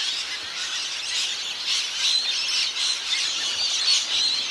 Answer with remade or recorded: recorded